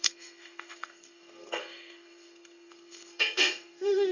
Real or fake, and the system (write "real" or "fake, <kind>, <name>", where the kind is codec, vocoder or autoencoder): fake, codec, SNAC